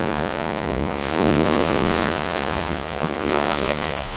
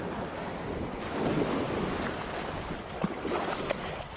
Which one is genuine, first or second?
second